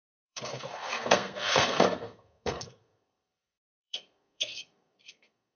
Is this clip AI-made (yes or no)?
yes